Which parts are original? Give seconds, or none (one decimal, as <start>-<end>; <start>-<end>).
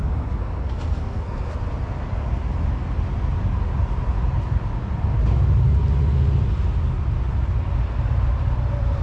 1.5-9.0